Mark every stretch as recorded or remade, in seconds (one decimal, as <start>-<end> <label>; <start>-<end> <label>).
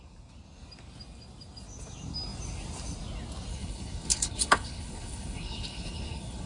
0.0-3.5 recorded; 3.5-6.5 remade